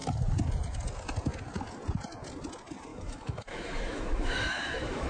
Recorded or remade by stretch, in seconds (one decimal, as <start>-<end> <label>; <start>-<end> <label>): 0.0-2.9 recorded; 2.9-5.1 remade